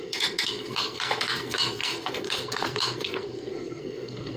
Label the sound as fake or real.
fake